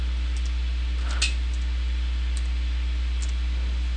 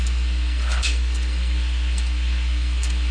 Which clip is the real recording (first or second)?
first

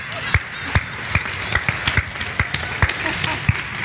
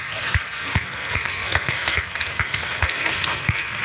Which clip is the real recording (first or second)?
first